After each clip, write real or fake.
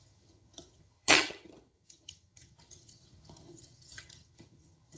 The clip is fake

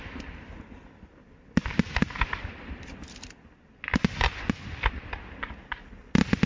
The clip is real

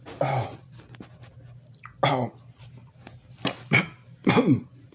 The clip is real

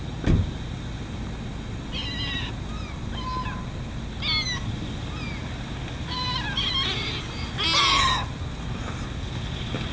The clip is real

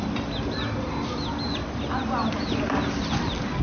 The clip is real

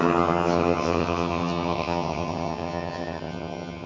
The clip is fake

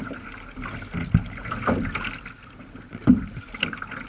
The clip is real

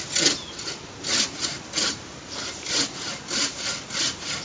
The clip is real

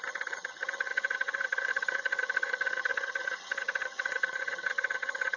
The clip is fake